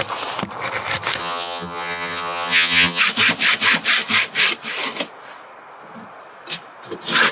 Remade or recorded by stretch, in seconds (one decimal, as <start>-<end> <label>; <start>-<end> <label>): 0.0-1.2 recorded; 1.2-3.0 remade; 3.0-7.3 recorded

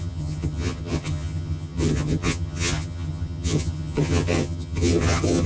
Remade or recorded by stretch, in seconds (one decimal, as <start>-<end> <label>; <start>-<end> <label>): 0.0-5.5 remade

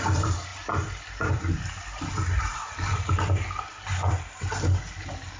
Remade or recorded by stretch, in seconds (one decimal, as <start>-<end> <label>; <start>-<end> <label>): 0.0-5.4 recorded

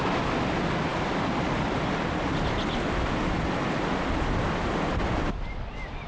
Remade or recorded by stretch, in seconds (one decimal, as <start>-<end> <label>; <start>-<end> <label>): 0.0-6.1 recorded

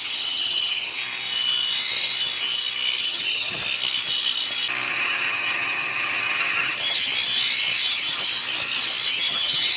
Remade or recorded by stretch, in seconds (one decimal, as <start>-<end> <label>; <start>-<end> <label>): 0.0-1.0 remade; 1.0-3.0 recorded; 3.0-3.6 remade; 3.6-4.9 recorded; 4.9-7.1 remade; 7.1-7.9 recorded; 7.9-8.3 remade; 8.3-9.1 recorded; 9.1-9.8 remade

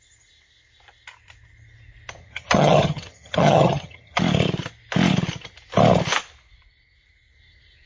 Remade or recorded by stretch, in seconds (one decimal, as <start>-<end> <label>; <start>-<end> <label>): 0.0-2.2 recorded; 2.2-4.2 remade; 4.2-7.9 recorded